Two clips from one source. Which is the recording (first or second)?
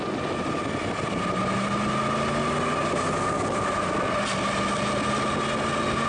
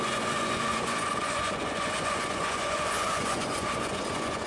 first